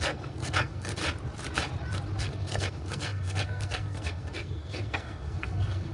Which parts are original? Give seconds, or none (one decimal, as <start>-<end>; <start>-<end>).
1.0-2.2

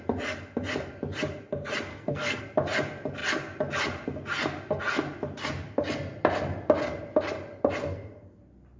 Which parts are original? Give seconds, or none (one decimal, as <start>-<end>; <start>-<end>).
0.0-1.9; 2.4-7.8; 8.4-8.8